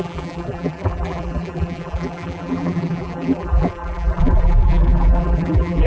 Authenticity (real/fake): fake